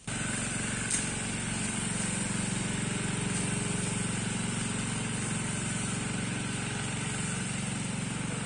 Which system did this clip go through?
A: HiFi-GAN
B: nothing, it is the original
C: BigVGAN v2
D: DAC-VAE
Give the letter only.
B